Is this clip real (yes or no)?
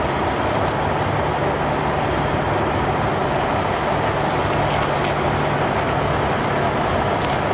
yes